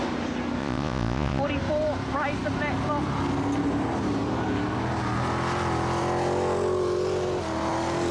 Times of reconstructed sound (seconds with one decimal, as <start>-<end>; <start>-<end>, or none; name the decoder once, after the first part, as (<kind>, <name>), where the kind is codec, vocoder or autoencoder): 0.6-1.4 (vocoder, Vocos)